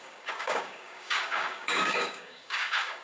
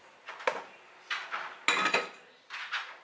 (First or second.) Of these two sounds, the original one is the second